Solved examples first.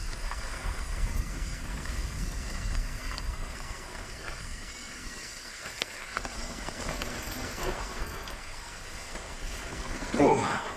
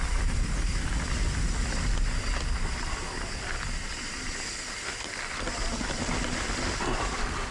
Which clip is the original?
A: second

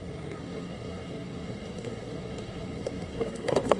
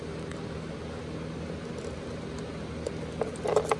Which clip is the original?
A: second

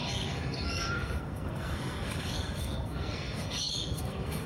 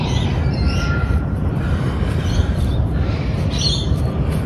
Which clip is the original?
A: second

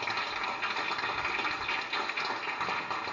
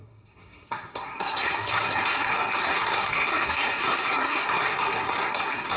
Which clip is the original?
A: first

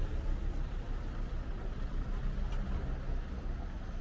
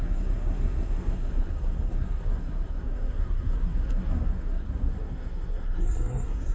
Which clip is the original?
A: first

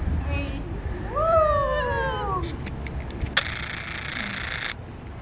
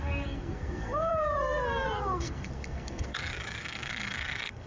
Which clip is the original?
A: first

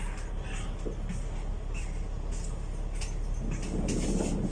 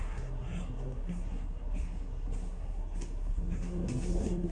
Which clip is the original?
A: first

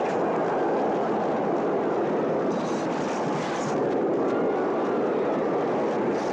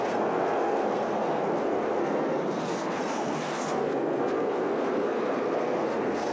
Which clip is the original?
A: first